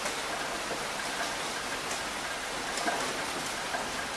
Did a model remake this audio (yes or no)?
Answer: no